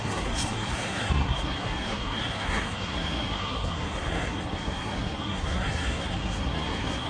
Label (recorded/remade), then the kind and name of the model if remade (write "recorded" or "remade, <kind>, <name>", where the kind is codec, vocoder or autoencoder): remade, codec, SNAC